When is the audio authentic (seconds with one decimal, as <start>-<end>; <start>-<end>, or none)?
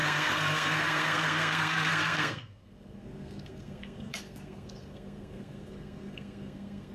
none